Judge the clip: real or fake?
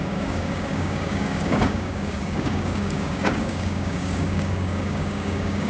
fake